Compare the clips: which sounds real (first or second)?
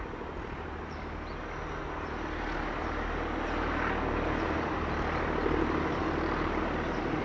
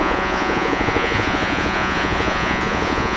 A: first